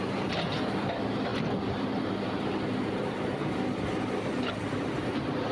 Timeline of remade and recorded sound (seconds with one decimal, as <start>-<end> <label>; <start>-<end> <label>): 0.0-5.5 remade